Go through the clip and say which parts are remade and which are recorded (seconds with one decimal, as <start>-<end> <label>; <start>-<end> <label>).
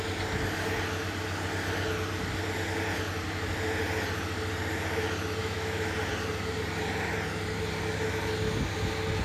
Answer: 0.0-5.4 recorded; 5.4-5.9 remade; 5.9-9.2 recorded